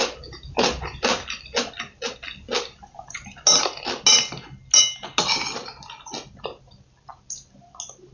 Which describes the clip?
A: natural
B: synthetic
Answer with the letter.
A